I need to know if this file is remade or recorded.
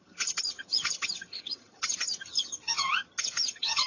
remade